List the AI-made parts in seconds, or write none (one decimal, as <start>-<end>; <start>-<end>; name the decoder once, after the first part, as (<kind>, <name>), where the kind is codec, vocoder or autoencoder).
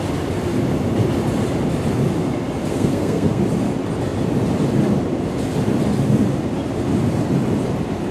2.7-3.4 (codec, SNAC)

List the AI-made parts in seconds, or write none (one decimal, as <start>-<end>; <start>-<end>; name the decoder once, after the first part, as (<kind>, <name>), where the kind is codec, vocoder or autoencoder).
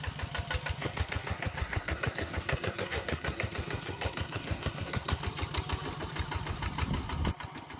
0.8-5.2 (codec, SNAC)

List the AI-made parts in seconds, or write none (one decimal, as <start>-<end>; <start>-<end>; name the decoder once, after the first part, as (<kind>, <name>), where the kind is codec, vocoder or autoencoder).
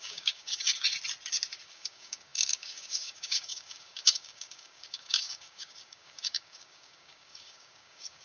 0.0-0.7 (codec, DAC); 1.7-8.2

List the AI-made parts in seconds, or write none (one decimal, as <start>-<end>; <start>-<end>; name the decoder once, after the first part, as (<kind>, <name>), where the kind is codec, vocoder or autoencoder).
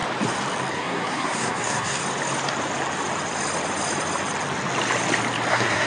0.7-2.0 (codec, SNAC); 5.5-5.9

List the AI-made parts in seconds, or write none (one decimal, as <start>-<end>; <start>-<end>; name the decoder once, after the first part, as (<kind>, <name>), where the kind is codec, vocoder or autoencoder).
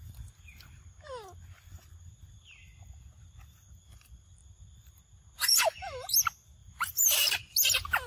6.6-7.4 (vocoder, BigVGAN v2)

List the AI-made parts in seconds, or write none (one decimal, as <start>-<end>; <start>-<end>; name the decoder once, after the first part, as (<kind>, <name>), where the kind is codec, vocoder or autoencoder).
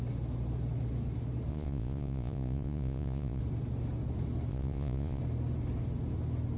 1.5-3.4 (vocoder, Vocos); 4.5-5.2